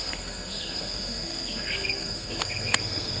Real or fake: fake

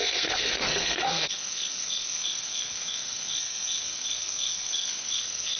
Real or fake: fake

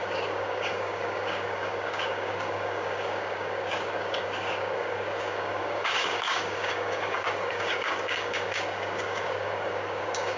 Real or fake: fake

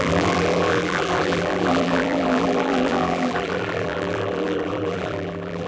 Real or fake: fake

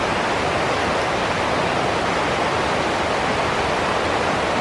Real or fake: real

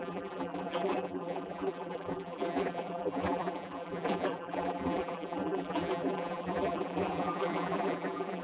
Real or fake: fake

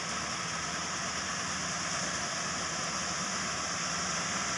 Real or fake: real